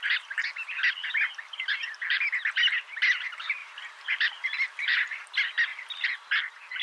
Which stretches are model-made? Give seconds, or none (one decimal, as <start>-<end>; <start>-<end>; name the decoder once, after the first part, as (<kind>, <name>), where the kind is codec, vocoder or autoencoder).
4.7-5.2 (vocoder, BigVGAN v2)